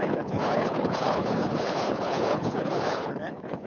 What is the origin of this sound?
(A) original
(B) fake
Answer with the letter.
B